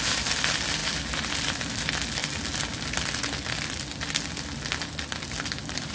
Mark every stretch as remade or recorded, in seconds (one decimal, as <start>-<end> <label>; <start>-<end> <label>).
0.0-5.9 recorded